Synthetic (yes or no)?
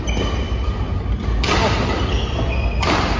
no